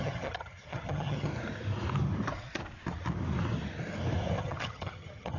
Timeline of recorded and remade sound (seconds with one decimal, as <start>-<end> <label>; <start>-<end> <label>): 0.0-1.3 remade; 1.3-4.4 recorded; 4.4-5.4 remade